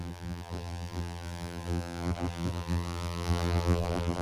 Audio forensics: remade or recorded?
remade